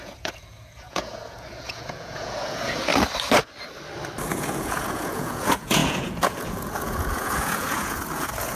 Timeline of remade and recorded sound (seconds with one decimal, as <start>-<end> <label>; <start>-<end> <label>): 0.0-2.9 remade; 2.9-4.3 recorded; 4.3-8.6 remade